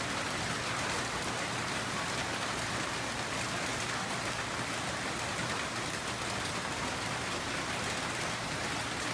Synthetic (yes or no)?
no